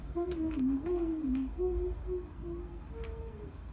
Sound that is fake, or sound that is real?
fake